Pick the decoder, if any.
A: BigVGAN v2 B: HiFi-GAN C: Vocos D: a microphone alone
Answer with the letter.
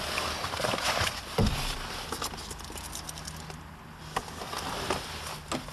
D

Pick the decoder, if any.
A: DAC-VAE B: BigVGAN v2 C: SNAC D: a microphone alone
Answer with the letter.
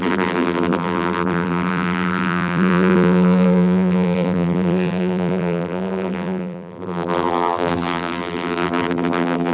B